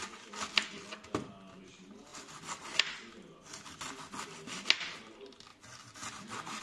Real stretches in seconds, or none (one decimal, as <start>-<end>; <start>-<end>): 0.0-6.6